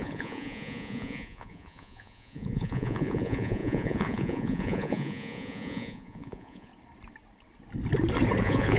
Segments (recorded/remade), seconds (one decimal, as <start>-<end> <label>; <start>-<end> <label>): 0.0-6.7 remade; 6.7-8.4 recorded; 8.4-8.8 remade